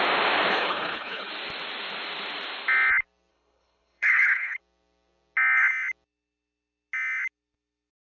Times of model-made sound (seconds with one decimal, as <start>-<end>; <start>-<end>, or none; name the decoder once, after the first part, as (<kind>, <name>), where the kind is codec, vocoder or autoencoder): 0.5-1.3 (codec, HILCodec); 3.3-4.6

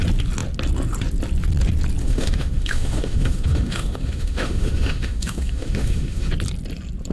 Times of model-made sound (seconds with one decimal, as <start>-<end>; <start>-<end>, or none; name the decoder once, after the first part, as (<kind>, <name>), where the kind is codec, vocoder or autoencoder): 2.0-6.3 (autoencoder, DAC-VAE)